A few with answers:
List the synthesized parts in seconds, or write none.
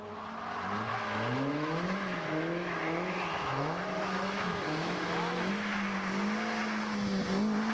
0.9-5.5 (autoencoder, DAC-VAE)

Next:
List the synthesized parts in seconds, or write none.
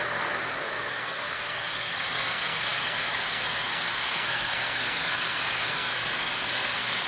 0.0-7.1 (codec, SNAC)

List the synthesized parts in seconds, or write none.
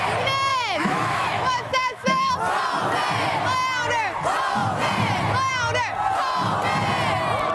0.5-2.3 (autoencoder, DAC-VAE)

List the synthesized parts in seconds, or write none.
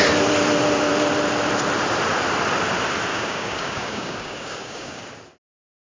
3.1-5.0 (codec, DAC)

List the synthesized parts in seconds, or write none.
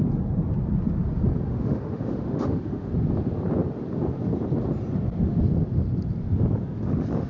1.5-2.9 (autoencoder, DAC-VAE)